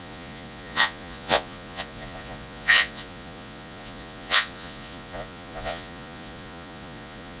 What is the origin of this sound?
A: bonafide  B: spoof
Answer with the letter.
B